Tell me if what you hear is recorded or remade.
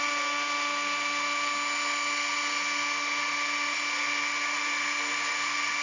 recorded